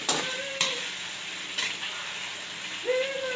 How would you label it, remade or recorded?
recorded